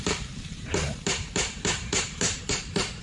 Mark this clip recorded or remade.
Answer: remade